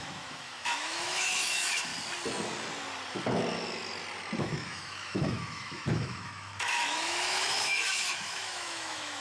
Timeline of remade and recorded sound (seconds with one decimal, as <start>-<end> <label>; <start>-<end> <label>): 0.0-1.9 remade; 1.9-4.4 recorded; 4.4-9.2 remade